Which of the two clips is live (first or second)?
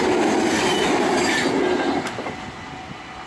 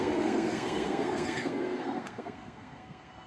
first